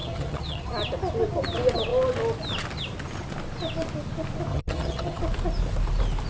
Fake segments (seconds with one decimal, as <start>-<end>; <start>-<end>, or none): 0.0-0.7; 4.5-5.2